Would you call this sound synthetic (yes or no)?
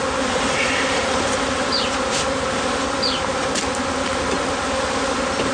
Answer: no